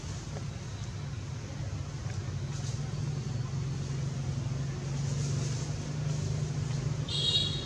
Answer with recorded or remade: recorded